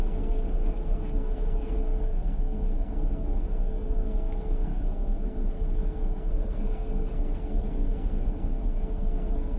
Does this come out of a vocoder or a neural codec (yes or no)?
yes